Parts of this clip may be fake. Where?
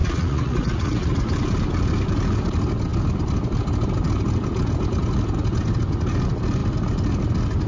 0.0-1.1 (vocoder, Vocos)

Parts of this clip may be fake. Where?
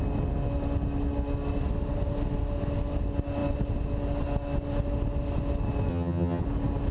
5.9-6.4 (vocoder, HiFi-GAN)